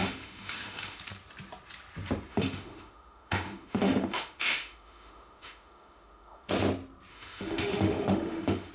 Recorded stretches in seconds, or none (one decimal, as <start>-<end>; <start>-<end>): 1.0-2.3; 6.5-7.1